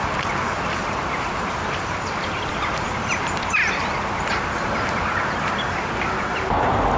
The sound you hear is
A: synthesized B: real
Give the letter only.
B